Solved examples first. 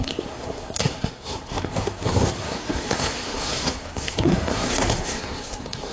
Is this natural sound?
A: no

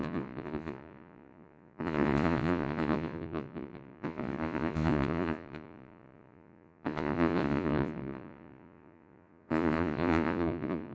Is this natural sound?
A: no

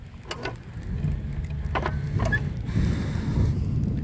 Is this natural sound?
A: yes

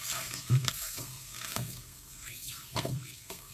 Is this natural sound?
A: no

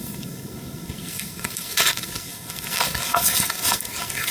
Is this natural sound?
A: no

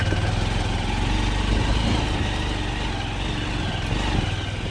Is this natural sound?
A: yes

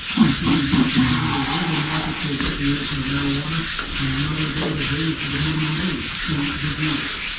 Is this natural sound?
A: yes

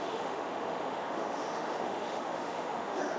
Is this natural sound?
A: no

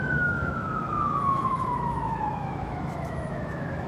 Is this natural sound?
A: no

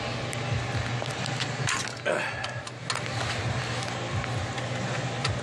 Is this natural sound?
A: yes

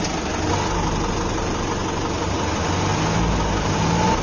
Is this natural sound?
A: yes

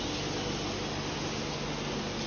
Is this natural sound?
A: yes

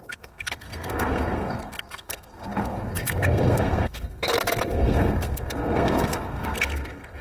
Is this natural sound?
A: no